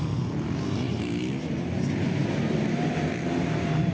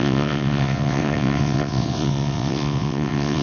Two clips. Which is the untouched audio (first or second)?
first